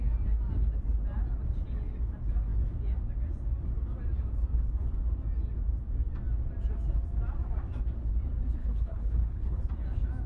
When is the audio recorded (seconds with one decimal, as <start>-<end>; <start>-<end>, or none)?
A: 0.0-8.6; 9.6-10.3

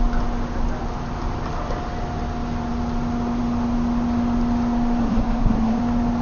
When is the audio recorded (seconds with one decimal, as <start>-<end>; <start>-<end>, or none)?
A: 0.0-5.0; 5.8-6.2

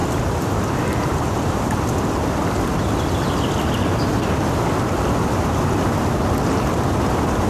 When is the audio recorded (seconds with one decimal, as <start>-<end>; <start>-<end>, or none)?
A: 0.6-7.5

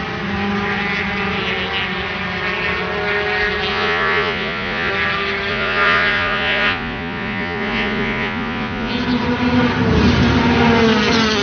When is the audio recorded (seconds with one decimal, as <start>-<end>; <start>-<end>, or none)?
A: 0.0-3.7; 4.9-5.5; 8.9-11.4

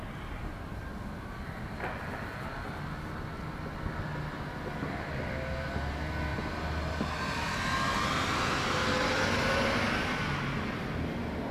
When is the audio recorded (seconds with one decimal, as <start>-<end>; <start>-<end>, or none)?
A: 0.0-11.5

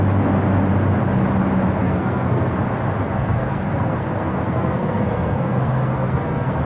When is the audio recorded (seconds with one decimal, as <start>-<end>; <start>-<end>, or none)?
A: 0.0-1.8; 2.6-3.0

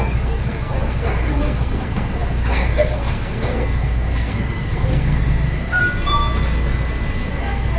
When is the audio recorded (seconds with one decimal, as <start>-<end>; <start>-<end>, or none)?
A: 5.8-7.3